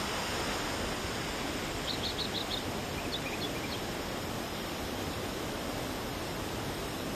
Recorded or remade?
recorded